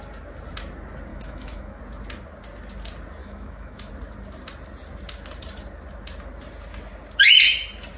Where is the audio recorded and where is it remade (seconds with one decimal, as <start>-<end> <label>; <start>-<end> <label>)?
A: 0.0-1.1 recorded; 1.1-1.8 remade; 1.8-3.2 recorded; 3.2-3.9 remade; 3.9-8.0 recorded